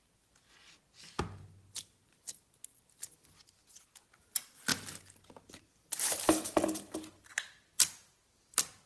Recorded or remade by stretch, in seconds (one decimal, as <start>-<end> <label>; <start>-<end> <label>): 0.0-4.7 recorded; 4.7-8.9 remade